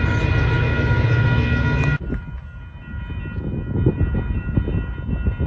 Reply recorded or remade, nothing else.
recorded